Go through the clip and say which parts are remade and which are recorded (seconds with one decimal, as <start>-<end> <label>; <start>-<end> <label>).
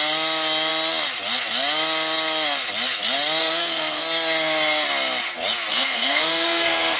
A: 0.0-3.4 recorded; 3.4-4.0 remade; 4.0-5.7 recorded; 5.7-7.0 remade